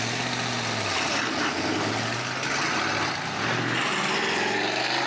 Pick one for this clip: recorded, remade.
recorded